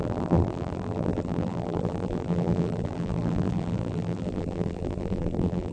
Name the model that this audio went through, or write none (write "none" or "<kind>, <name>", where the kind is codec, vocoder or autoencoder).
vocoder, BigVGAN v2